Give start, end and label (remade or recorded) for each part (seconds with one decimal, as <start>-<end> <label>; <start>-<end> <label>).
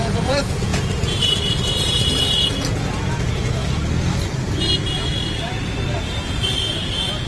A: 0.0-3.6 remade; 3.6-6.0 recorded; 6.0-7.3 remade